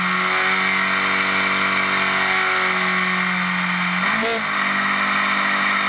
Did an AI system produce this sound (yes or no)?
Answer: no